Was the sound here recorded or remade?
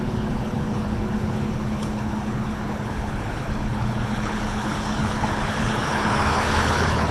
remade